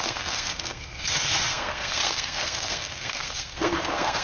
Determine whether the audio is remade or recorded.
remade